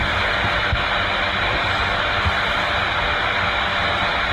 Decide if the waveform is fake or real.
real